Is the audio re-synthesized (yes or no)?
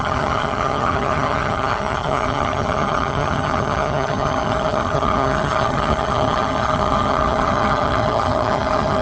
yes